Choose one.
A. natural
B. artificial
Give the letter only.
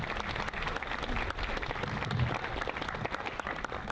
A